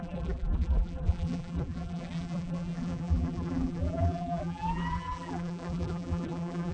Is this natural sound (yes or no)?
no